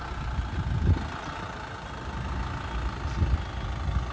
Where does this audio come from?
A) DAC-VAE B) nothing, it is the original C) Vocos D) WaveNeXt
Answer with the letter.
B